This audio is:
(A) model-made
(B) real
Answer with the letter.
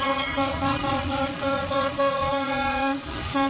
A